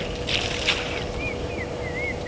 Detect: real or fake real